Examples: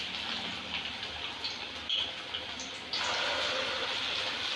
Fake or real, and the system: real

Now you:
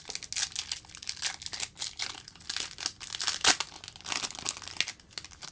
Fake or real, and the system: real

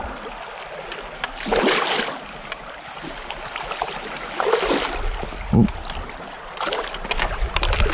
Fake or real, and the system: real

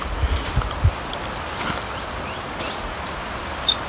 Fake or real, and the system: real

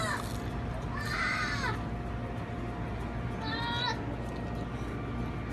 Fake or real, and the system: real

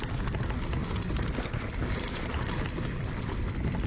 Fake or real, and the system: real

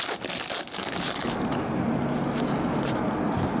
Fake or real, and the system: real